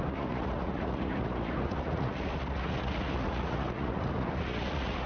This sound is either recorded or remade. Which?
remade